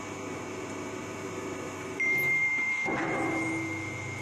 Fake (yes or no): yes